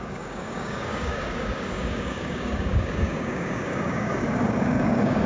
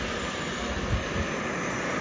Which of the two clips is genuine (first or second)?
second